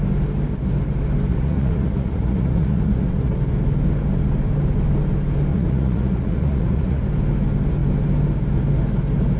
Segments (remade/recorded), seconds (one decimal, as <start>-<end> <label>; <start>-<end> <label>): 0.0-1.3 recorded; 1.3-3.3 remade; 3.3-5.5 recorded; 5.5-7.0 remade; 7.0-9.4 recorded